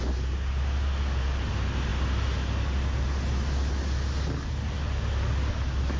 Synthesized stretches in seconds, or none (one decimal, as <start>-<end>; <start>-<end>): none